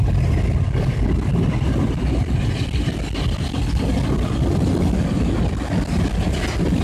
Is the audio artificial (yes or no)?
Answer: no